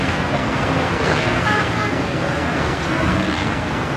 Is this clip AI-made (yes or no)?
yes